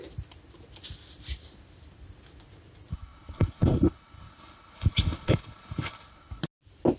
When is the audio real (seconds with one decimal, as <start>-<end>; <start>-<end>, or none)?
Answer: 0.0-2.9; 6.4-7.0